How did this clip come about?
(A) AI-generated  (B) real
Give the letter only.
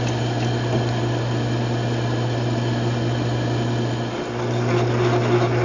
B